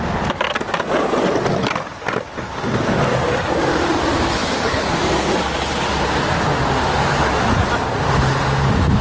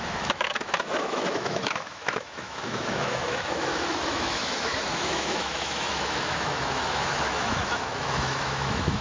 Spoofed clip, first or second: second